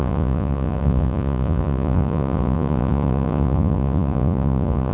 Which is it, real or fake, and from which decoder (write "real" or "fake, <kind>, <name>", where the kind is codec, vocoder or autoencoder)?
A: fake, vocoder, Vocos